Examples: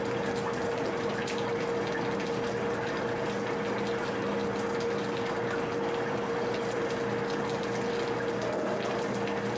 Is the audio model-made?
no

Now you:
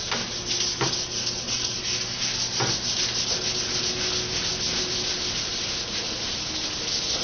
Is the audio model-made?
no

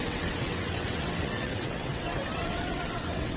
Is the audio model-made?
yes